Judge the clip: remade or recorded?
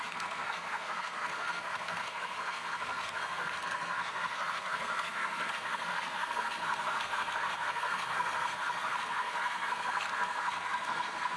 remade